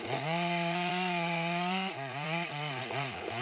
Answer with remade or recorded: remade